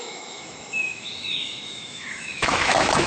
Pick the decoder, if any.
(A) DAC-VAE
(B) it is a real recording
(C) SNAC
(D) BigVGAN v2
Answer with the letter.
A